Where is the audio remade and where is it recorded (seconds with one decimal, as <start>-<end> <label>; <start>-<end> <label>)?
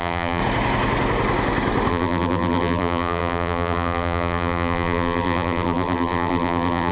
0.0-0.4 remade; 0.4-1.9 recorded; 1.9-6.9 remade